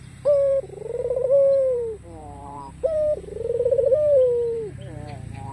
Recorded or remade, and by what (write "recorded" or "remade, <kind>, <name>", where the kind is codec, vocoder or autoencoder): remade, vocoder, BigVGAN v2